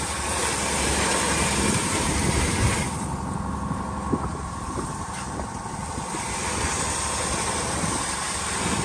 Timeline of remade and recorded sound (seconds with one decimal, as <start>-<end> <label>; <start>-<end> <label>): 0.0-4.3 recorded; 4.3-5.3 remade; 5.3-8.8 recorded

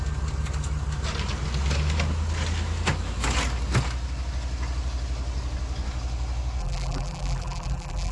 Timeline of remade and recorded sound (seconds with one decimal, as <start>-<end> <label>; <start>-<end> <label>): 0.0-6.6 recorded; 6.6-8.1 remade

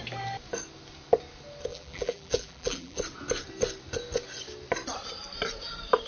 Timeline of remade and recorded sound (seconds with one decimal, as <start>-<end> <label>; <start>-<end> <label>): 0.0-1.7 recorded; 1.7-3.0 remade; 3.0-6.1 recorded

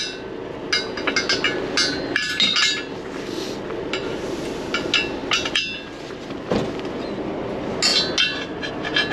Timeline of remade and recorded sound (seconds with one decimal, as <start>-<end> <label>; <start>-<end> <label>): 0.0-9.1 recorded